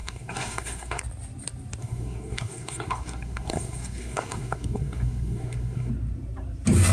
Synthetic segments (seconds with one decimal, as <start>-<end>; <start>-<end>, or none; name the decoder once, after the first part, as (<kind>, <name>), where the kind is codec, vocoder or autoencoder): 0.0-1.0 (codec, SNAC); 1.8-5.9